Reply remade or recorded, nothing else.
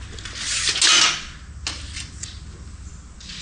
recorded